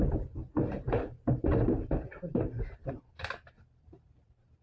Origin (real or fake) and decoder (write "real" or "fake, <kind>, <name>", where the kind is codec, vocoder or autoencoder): fake, vocoder, BigVGAN v2